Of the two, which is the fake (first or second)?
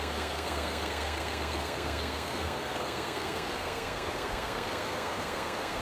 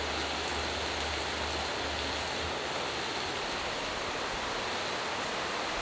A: first